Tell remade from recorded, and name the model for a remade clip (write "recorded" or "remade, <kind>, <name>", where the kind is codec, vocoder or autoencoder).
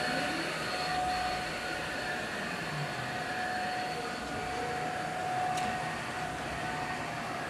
recorded